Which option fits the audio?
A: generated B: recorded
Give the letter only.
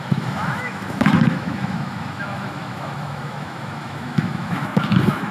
A